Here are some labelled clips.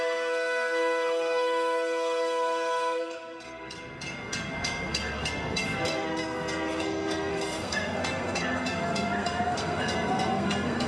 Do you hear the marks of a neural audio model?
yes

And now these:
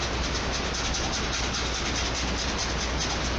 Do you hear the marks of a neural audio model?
no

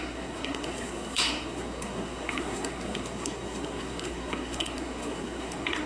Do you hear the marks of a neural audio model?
yes